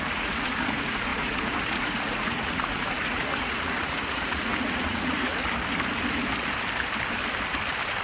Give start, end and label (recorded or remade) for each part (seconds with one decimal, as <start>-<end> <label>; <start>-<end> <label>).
0.0-5.3 remade; 5.3-8.0 recorded